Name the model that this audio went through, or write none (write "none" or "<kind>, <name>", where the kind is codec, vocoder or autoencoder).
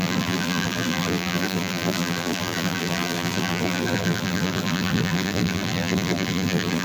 vocoder, BigVGAN v2